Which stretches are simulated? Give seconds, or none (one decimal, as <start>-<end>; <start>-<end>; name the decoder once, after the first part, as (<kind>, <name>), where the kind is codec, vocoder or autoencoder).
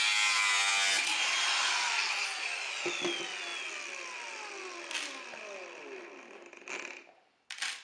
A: none